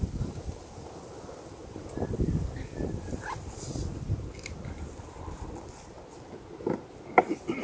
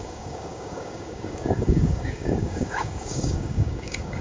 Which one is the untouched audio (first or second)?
first